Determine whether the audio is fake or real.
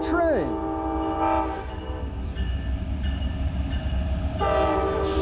real